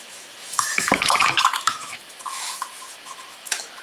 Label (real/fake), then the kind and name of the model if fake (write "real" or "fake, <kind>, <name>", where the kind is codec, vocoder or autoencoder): fake, autoencoder, DAC-VAE